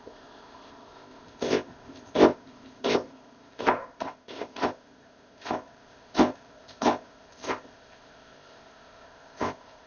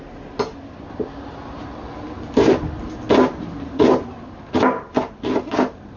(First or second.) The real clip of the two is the second